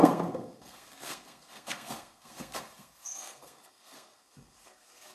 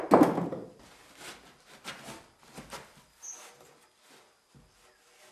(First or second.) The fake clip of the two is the first